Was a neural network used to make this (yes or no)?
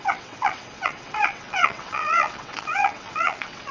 yes